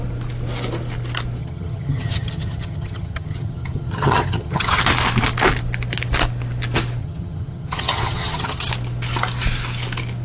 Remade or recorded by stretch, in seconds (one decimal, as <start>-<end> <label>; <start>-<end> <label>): 0.0-1.4 recorded; 1.4-4.8 remade; 4.8-7.0 recorded; 7.0-8.7 remade; 8.7-10.2 recorded